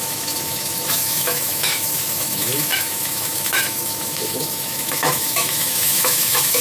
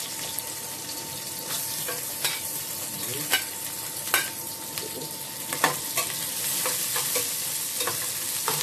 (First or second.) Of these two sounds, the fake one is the first